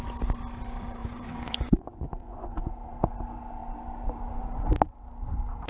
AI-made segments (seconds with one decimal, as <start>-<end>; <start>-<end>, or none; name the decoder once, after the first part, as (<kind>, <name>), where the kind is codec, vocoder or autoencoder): 1.0-2.6 (vocoder, Vocos)